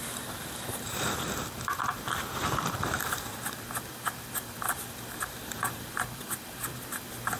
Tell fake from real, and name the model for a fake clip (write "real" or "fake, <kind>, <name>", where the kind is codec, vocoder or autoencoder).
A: fake, vocoder, BigVGAN v2